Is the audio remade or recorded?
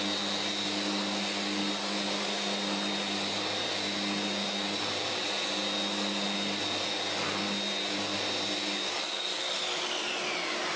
recorded